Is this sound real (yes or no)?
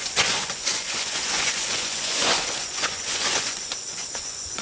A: no